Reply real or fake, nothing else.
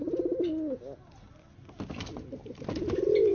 real